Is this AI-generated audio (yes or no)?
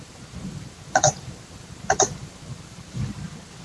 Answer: yes